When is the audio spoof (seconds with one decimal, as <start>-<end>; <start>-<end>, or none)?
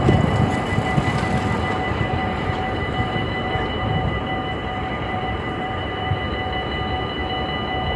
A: 2.2-6.2